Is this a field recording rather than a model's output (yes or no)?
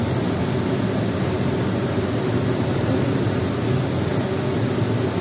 yes